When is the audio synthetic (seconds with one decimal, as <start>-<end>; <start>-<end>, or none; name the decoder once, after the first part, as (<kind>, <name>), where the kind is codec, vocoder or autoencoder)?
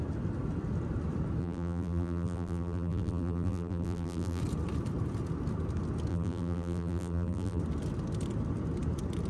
1.4-4.4 (vocoder, BigVGAN v2); 6.1-7.6